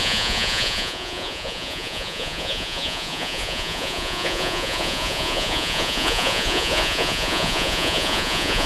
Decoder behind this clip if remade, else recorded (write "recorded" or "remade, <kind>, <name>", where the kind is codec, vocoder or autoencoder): remade, vocoder, Vocos